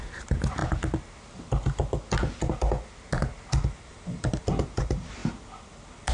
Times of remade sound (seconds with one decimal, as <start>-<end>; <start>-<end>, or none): 3.9-4.4